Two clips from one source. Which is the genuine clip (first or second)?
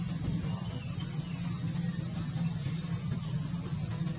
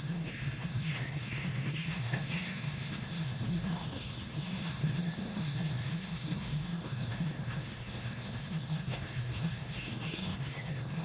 first